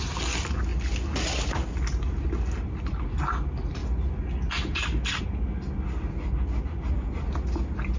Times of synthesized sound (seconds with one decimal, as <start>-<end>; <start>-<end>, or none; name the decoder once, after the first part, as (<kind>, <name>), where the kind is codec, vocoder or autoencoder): none